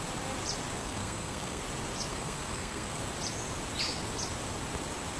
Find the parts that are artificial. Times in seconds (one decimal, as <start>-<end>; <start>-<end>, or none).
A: 0.8-1.6; 2.1-3.0